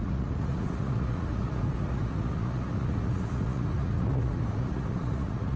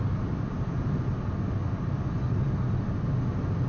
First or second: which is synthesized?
first